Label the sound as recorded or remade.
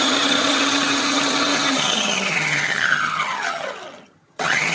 remade